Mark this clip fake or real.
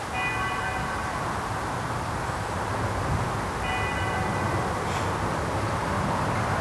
real